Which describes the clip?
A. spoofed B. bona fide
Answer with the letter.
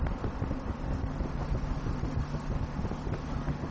B